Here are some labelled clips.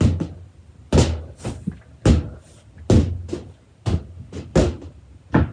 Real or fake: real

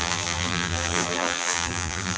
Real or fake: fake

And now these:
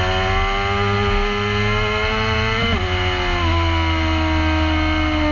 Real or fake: real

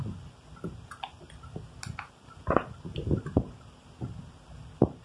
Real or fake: real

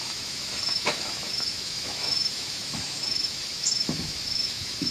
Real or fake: fake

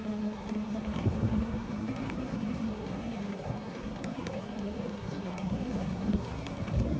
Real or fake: fake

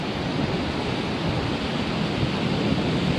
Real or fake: real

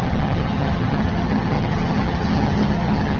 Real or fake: fake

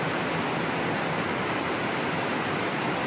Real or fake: real